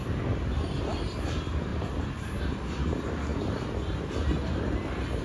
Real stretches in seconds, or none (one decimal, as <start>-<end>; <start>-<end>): 0.0-1.7; 2.4-5.2